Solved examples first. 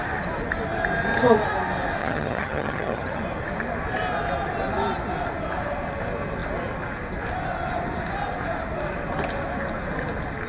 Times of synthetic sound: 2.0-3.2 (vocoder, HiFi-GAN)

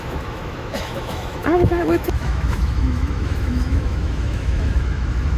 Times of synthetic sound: 0.0-5.4 (autoencoder, DAC-VAE)

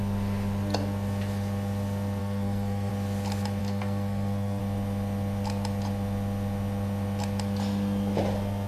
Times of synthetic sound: 2.2-2.9 (codec, SNAC); 3.6-4.6

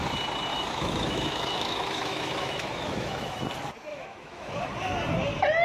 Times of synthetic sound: 0.5-3.4 (autoencoder, DAC-VAE); 3.9-4.6

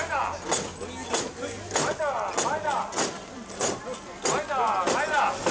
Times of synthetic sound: none